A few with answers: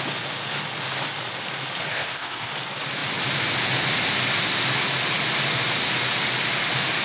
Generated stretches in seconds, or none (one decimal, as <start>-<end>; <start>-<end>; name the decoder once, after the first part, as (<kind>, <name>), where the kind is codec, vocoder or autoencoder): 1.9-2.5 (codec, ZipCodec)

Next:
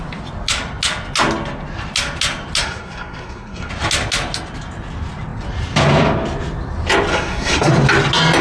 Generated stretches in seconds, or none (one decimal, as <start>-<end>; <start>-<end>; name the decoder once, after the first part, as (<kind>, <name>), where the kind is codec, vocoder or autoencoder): 2.6-3.7 (codec, SNAC); 7.1-7.7

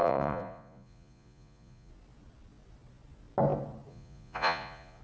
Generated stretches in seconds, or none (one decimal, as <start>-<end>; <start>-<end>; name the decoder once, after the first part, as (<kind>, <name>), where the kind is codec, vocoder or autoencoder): 0.0-1.9 (vocoder, Vocos); 3.9-5.0